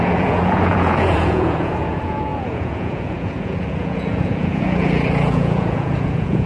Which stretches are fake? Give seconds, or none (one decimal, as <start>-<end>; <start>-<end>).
0.0-6.5